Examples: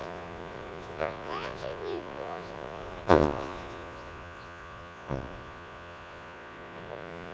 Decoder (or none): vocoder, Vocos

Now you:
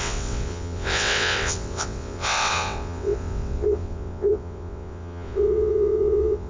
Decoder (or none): vocoder, WaveNeXt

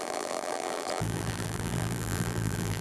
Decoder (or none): vocoder, BigVGAN v2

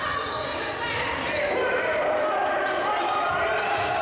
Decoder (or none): none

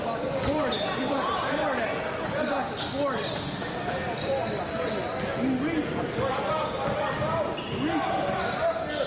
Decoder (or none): none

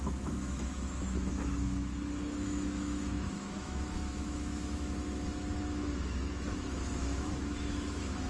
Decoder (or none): autoencoder, DAC-VAE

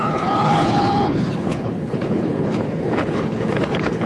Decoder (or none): codec, HILCodec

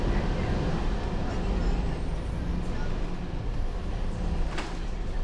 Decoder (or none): none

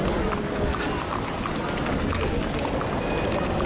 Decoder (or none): none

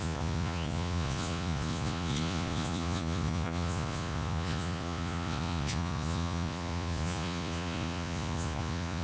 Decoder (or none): vocoder, Vocos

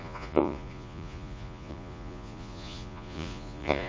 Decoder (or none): vocoder, Vocos